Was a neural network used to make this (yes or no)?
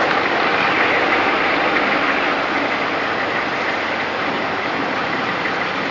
no